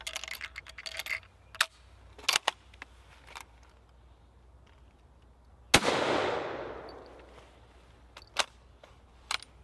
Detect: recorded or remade recorded